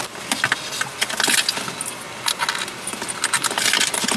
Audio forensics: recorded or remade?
recorded